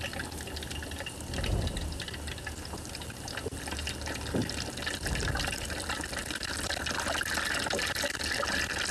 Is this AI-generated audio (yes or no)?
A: no